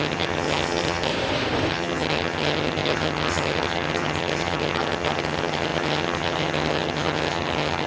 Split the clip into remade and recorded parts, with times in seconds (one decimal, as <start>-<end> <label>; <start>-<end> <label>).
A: 0.0-1.1 remade; 1.1-1.7 recorded; 1.7-7.9 remade